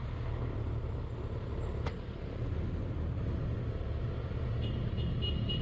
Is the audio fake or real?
real